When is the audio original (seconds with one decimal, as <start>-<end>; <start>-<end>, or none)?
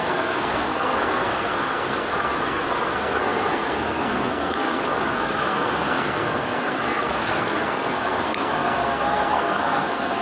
none